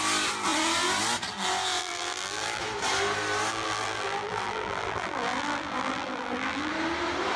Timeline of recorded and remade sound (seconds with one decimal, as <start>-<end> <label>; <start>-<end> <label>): 0.0-1.8 recorded; 1.8-2.6 remade; 2.6-3.5 recorded; 3.5-6.7 remade; 6.7-7.4 recorded